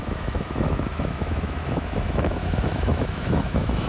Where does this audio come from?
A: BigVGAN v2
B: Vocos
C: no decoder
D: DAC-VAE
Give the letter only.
D